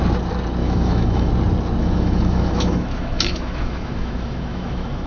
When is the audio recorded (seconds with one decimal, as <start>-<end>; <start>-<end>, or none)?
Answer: 0.0-0.6; 1.3-1.8